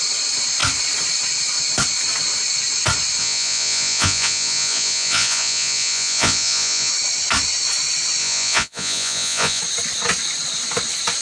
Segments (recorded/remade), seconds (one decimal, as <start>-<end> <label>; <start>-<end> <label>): 0.0-3.2 recorded; 3.2-6.9 remade; 6.9-8.2 recorded; 8.2-9.6 remade; 9.6-11.2 recorded